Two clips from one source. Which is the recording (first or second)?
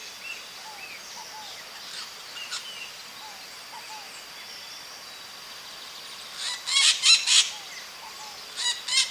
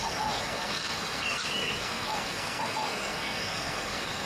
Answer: first